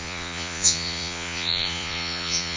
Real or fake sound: fake